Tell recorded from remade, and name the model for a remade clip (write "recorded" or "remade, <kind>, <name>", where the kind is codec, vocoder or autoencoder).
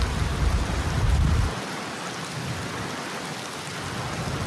recorded